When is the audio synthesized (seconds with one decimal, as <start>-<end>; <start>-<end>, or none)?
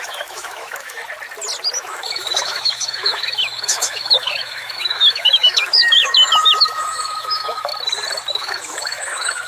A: 0.0-1.0; 1.8-7.7; 8.3-9.5